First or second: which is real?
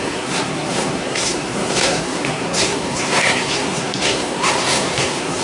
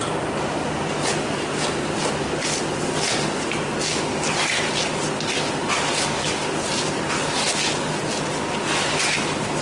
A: second